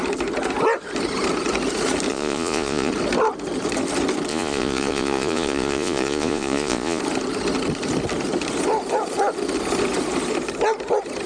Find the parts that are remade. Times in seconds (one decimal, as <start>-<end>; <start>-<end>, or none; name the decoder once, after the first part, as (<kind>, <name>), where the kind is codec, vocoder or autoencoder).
2.1-2.9 (vocoder, Vocos); 4.3-7.0